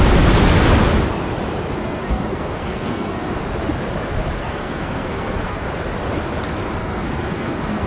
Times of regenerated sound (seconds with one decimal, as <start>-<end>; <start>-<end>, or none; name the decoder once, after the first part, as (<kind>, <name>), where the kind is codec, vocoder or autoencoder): 1.8-3.4 (codec, SNAC); 4.4-5.7; 6.8-7.9